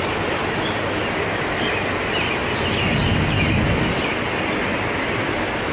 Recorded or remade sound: recorded